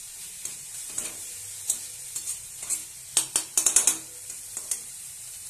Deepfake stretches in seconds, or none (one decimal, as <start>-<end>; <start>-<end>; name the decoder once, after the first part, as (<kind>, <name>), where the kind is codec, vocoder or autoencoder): 0.0-1.3 (vocoder, BigVGAN v2); 2.2-2.8; 4.3-5.5